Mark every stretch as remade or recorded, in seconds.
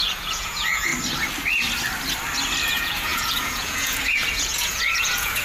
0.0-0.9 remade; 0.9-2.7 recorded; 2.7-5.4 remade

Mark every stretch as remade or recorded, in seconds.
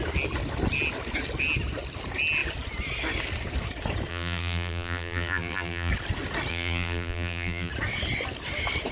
0.0-4.1 recorded; 4.1-5.9 remade; 5.9-6.5 recorded; 6.5-7.7 remade; 7.7-8.9 recorded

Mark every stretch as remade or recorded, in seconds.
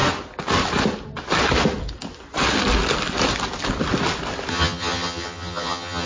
0.0-4.5 recorded; 4.5-6.1 remade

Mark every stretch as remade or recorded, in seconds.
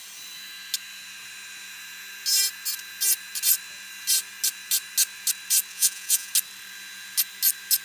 0.0-5.7 recorded; 5.7-6.3 remade; 6.3-7.8 recorded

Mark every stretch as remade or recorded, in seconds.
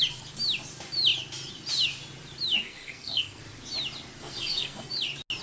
0.0-2.6 recorded; 2.6-3.4 remade; 3.4-4.2 recorded; 4.2-4.9 remade; 4.9-5.4 recorded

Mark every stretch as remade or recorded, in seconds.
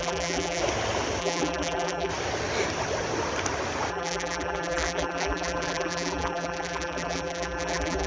0.0-0.6 remade; 0.6-1.2 recorded; 1.2-2.1 remade; 2.1-3.9 recorded; 3.9-8.1 remade